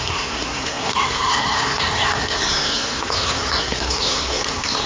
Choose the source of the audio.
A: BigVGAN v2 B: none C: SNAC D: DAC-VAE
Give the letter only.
C